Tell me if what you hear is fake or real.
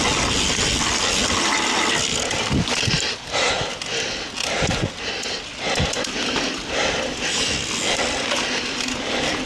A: real